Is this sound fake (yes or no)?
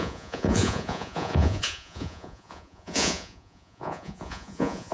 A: yes